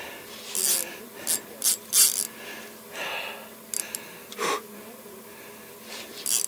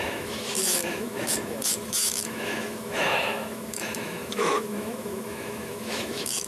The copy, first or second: second